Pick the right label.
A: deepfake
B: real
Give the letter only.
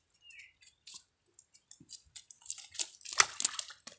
B